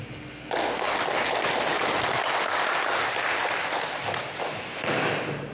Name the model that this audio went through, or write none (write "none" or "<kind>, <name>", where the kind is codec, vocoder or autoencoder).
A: none